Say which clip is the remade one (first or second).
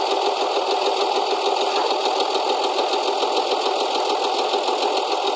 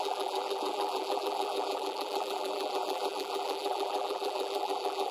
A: second